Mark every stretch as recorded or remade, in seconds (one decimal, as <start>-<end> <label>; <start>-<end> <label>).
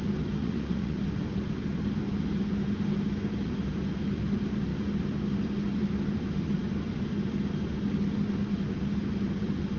0.0-0.4 recorded; 0.4-1.0 remade; 1.0-9.8 recorded